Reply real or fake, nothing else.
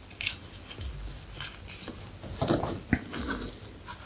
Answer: real